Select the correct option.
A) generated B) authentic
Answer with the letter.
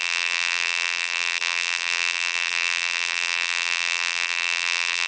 A